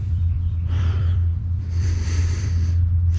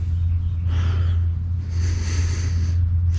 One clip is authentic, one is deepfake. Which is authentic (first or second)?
second